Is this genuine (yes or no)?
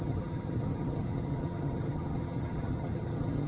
no